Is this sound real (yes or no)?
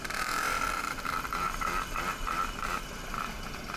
no